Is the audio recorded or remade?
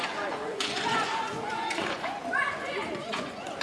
remade